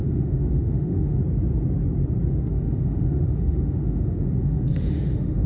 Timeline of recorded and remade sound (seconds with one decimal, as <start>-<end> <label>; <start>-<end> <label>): 0.0-1.2 remade; 1.2-2.3 recorded; 2.3-5.5 remade